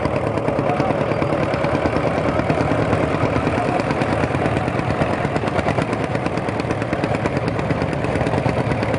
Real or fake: real